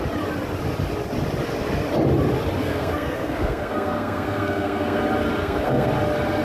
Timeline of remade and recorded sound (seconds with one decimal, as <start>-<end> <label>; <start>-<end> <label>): 0.0-2.6 recorded; 2.6-5.0 remade; 5.0-5.4 recorded; 5.4-5.9 remade; 5.9-6.4 recorded